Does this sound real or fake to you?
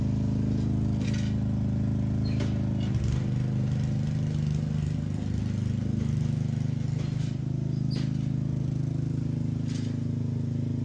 real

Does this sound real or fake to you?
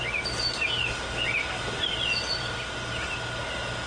real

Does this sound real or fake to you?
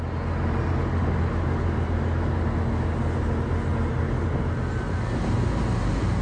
real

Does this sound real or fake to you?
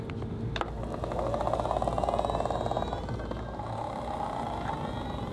real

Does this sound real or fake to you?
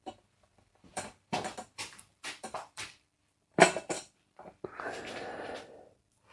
fake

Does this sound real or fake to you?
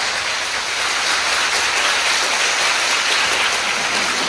real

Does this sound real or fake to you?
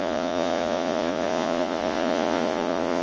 fake